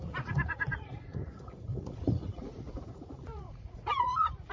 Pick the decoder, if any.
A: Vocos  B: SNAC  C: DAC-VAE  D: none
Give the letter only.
A